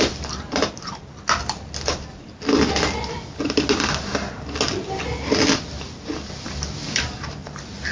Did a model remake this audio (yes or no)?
no